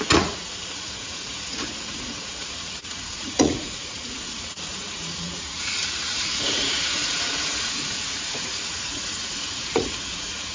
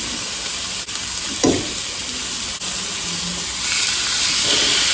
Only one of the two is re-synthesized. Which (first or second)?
first